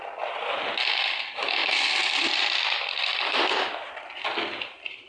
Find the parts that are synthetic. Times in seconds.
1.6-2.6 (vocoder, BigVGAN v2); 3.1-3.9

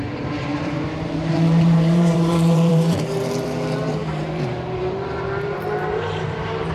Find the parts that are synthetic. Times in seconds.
0.0-6.7 (vocoder, BigVGAN v2)

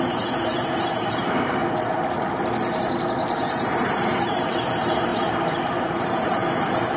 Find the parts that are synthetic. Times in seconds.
0.0-1.6 (vocoder, BigVGAN v2); 2.8-6.4

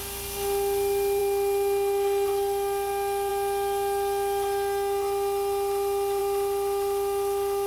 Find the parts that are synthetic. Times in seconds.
none